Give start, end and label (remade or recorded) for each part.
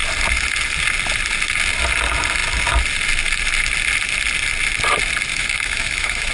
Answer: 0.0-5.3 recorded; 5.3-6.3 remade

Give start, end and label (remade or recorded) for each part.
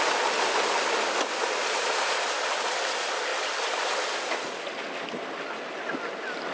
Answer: 0.0-6.5 recorded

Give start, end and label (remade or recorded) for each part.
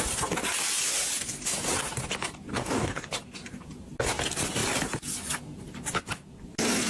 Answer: 0.0-2.5 recorded; 2.5-3.2 remade; 3.2-6.9 recorded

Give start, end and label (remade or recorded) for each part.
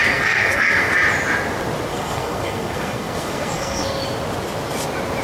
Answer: 0.0-0.9 remade; 0.9-1.9 recorded; 1.9-4.0 remade; 4.0-5.2 recorded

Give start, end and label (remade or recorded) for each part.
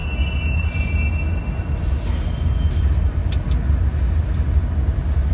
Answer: 0.0-5.3 recorded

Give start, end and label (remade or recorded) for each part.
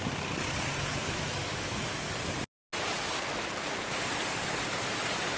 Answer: 0.0-0.9 recorded; 0.9-2.1 remade; 2.1-5.4 recorded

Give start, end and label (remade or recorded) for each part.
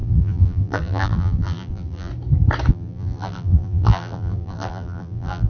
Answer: 0.0-2.1 remade; 2.1-2.7 recorded; 2.7-5.5 remade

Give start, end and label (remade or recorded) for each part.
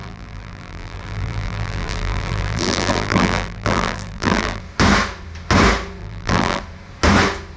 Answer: 0.0-4.6 remade; 4.6-6.0 recorded; 6.0-6.6 remade; 6.6-7.6 recorded